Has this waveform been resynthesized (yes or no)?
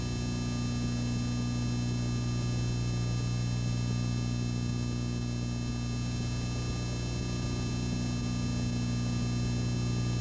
no